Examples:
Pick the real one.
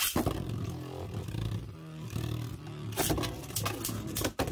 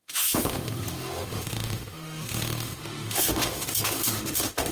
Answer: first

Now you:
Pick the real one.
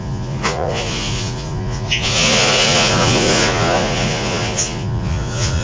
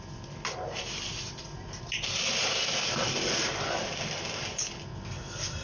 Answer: second